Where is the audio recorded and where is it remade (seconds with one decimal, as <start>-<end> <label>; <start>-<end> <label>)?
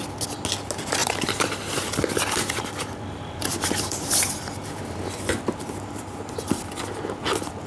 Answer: 0.0-1.0 recorded; 1.0-4.3 remade; 4.3-7.7 recorded